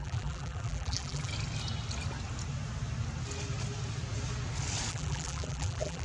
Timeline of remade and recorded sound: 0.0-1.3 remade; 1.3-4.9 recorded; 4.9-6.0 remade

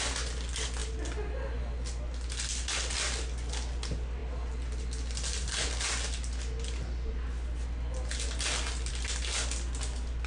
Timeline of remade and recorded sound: 0.0-10.3 recorded

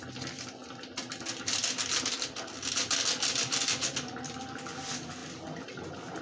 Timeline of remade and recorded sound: 0.0-6.2 recorded

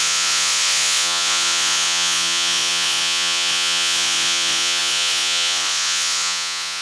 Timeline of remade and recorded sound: 0.0-6.8 remade